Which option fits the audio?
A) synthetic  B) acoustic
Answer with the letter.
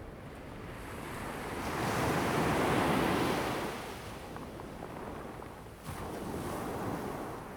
B